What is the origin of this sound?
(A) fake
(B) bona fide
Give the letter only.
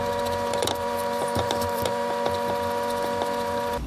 A